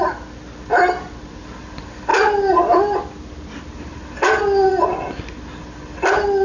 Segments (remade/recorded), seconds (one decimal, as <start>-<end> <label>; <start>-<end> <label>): 0.0-6.4 recorded